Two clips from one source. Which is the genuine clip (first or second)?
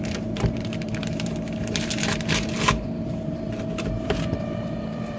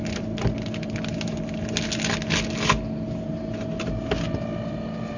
second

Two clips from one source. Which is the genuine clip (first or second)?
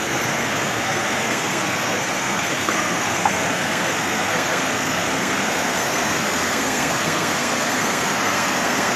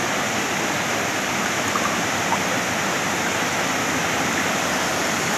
second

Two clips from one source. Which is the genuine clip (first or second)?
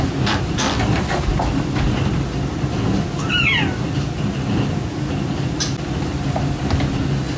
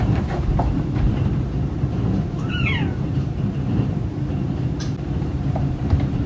first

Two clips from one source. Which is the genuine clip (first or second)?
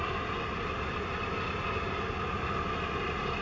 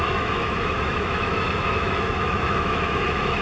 first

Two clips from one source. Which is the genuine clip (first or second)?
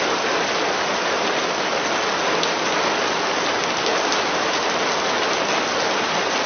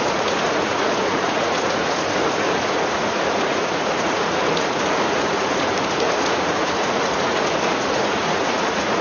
first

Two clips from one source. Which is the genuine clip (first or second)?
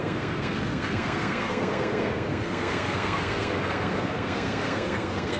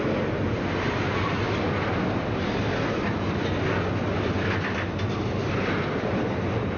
second